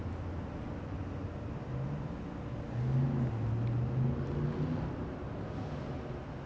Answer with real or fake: real